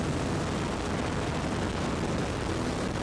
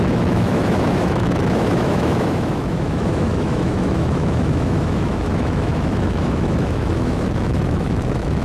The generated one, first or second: second